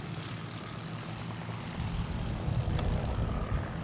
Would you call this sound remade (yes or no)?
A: no